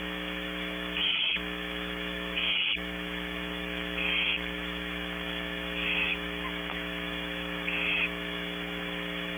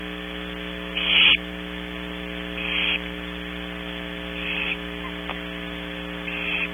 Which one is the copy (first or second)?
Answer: first